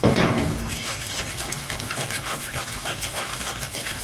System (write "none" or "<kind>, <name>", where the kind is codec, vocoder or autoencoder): codec, DAC